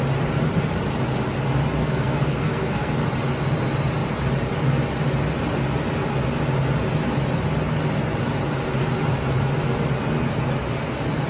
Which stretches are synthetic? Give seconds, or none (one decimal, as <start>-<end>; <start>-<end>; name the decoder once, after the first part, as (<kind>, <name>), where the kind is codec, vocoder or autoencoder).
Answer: 1.8-2.9 (codec, SNAC)